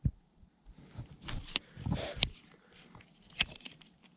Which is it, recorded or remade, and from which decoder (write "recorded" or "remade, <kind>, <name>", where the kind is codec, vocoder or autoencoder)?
recorded